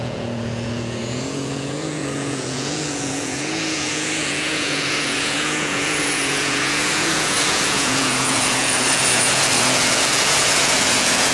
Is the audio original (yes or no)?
no